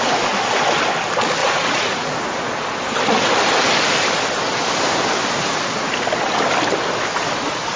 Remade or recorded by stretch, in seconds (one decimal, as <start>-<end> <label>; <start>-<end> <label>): 0.0-1.4 recorded; 1.4-2.1 remade; 2.1-7.8 recorded